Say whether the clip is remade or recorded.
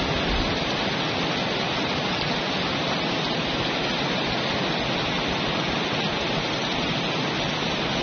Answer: recorded